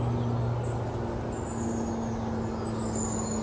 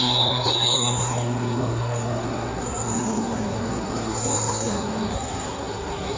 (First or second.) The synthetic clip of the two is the second